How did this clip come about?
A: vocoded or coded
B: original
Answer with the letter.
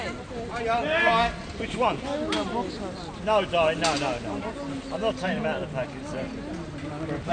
B